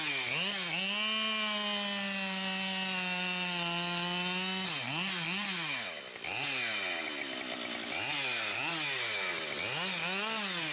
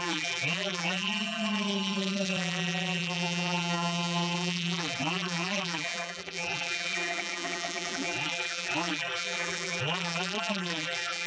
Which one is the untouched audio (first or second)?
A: first